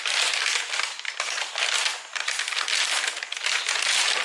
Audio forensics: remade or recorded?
recorded